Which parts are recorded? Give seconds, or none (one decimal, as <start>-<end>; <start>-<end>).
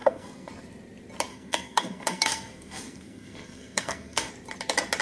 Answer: 0.5-1.3; 4.3-5.0